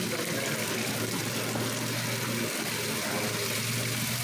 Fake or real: real